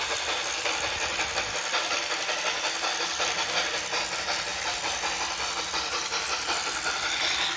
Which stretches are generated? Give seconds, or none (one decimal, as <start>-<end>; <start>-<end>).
none

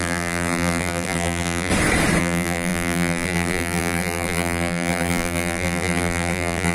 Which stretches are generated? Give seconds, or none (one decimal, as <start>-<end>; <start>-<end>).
0.0-1.7; 2.2-6.7

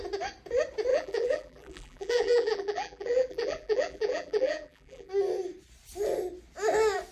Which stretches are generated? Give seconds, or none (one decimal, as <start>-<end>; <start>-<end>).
0.9-5.1